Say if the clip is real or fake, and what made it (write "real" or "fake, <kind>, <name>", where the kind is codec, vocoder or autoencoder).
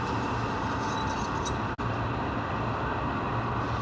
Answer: real